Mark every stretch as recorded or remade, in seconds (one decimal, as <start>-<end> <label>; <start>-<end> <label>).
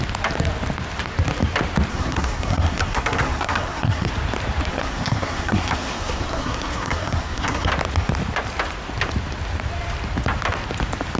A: 0.0-1.9 recorded; 1.9-4.1 remade; 4.1-4.7 recorded; 4.7-7.7 remade; 7.7-11.2 recorded